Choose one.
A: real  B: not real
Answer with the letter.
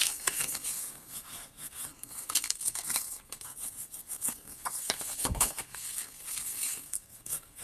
B